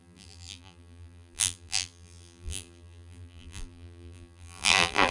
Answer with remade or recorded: remade